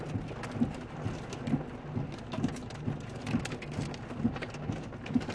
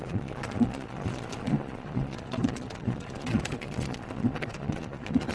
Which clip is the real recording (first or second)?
first